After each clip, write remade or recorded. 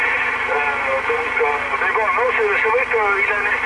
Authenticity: recorded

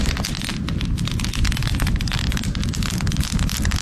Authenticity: recorded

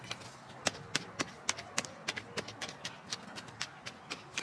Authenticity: recorded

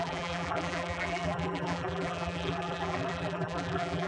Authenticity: remade